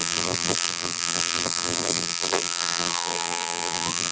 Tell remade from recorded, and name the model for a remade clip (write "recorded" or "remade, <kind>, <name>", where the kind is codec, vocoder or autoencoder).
remade, vocoder, BigVGAN v2